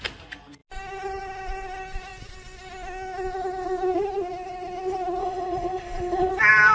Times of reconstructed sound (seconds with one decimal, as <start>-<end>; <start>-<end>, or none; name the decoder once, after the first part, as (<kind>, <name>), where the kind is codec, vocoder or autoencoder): 5.2-6.3 (codec, HILCodec)